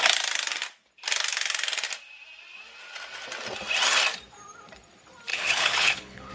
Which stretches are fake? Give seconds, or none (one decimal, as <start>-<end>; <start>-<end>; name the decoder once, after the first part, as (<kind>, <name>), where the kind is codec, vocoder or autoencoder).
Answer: 5.3-6.3 (codec, HILCodec)